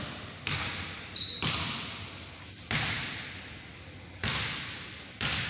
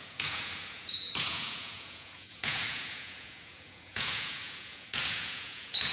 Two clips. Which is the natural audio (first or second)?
first